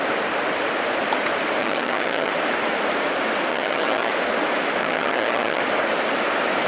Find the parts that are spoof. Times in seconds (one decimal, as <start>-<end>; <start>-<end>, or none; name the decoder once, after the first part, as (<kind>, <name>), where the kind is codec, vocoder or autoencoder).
1.6-2.3 (vocoder, HiFi-GAN); 3.5-4.1; 4.8-5.6